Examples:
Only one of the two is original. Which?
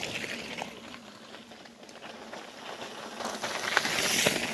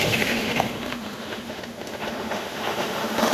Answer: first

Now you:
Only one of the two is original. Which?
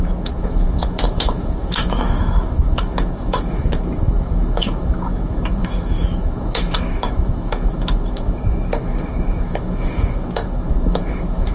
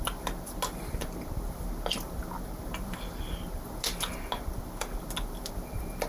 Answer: second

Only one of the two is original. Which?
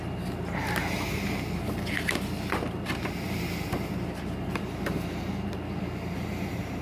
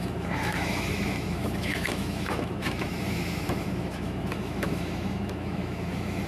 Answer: first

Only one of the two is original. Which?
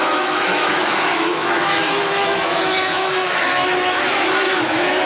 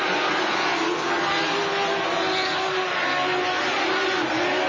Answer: second